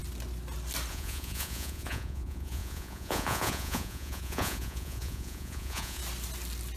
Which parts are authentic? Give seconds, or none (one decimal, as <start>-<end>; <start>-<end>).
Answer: 0.0-0.9; 6.0-6.8

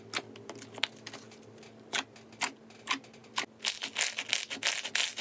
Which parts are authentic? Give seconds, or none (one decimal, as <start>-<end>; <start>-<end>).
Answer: 0.0-5.2

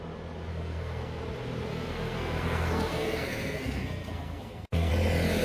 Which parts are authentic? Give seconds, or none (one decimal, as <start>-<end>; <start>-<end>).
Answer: 0.0-0.5; 1.2-1.7; 4.9-5.4